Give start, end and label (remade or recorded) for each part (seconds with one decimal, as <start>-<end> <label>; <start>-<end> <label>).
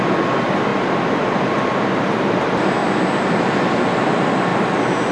0.0-5.1 recorded